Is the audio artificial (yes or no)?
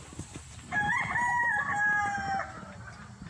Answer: yes